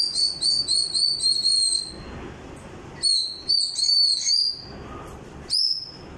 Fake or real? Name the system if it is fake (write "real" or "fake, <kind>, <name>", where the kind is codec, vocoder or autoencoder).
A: real